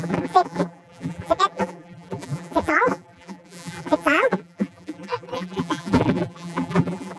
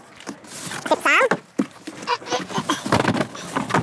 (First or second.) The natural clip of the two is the second